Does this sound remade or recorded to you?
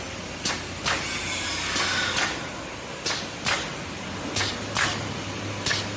recorded